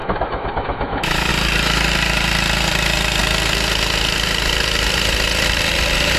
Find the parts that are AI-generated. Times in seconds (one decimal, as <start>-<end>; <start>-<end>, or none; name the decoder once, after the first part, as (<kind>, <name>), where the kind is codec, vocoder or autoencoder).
0.0-1.3 (autoencoder, DAC-VAE)